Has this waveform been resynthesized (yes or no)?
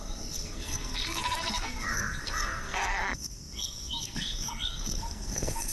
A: yes